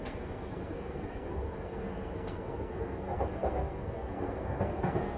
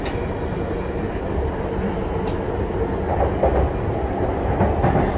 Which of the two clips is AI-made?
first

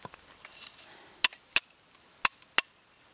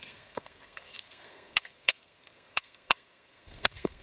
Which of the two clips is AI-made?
second